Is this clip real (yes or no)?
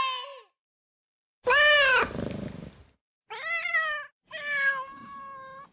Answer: yes